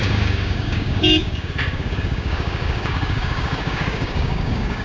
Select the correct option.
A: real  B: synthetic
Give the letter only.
B